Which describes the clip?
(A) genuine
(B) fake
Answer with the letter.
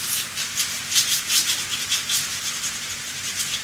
B